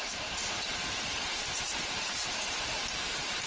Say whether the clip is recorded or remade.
remade